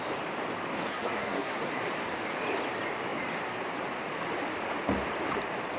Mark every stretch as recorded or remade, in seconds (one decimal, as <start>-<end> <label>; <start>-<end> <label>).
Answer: 0.0-0.9 recorded; 0.9-1.6 remade; 1.6-5.8 recorded